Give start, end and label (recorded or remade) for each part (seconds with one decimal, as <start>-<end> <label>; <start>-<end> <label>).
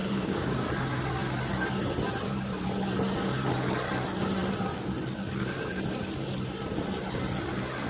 0.0-0.6 remade; 0.6-7.9 recorded